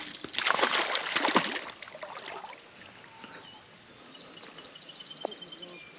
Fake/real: real